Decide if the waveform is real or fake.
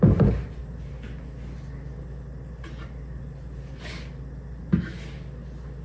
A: real